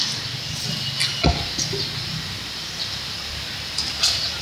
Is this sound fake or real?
real